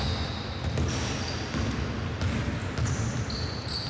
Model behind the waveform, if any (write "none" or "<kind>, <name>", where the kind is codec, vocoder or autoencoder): none